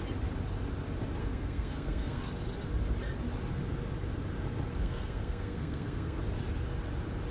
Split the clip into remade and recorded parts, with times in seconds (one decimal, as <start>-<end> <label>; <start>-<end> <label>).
0.0-1.2 recorded; 1.2-2.2 remade; 2.2-4.7 recorded; 4.7-6.2 remade; 6.2-7.3 recorded